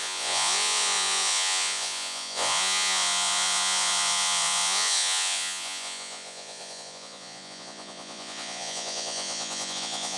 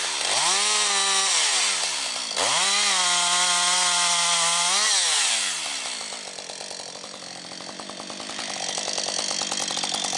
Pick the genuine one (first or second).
second